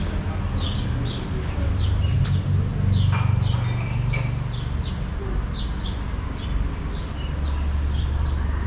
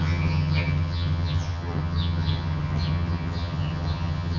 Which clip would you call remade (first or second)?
second